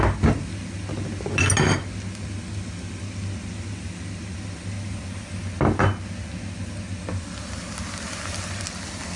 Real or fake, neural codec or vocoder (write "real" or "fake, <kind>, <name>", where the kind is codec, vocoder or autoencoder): real